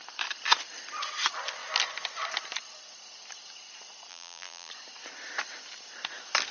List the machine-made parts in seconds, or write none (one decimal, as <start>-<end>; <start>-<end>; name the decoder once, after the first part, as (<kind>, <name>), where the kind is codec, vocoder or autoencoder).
4.1-4.7 (vocoder, BigVGAN v2)